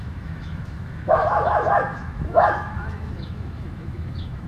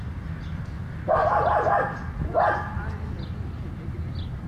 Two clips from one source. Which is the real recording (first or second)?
second